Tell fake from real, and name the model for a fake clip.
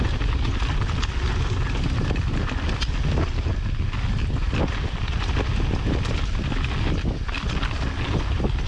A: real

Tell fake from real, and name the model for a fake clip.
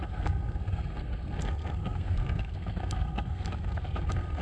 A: fake, codec, SNAC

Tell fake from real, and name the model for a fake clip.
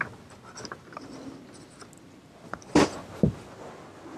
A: real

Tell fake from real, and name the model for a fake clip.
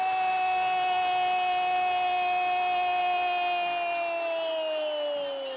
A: real